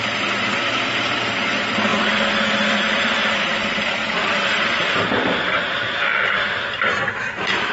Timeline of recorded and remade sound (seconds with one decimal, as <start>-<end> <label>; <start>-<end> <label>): 0.0-1.9 remade; 1.9-2.8 recorded; 2.8-7.7 remade